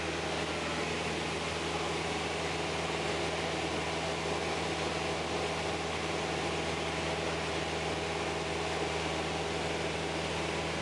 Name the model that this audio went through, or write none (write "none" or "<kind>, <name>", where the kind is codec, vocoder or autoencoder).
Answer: none